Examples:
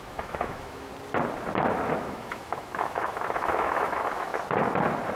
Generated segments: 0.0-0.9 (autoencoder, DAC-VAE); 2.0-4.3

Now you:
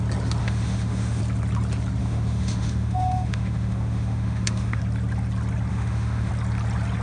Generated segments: 0.4-1.2 (autoencoder, DAC-VAE); 2.0-4.8; 5.7-6.3

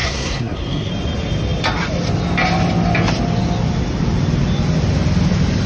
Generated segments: 0.0-0.9 (codec, SNAC)

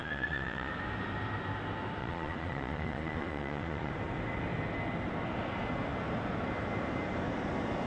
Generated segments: 0.0-0.7 (vocoder, Vocos); 2.0-3.9

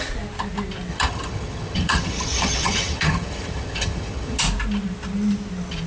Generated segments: 0.9-4.4 (vocoder, HiFi-GAN)

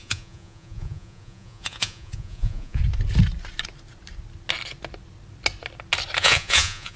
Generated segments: 0.0-2.8 (vocoder, Vocos); 6.2-7.0

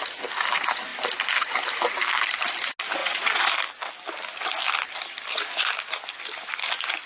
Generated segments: 3.0-3.5 (vocoder, Vocos)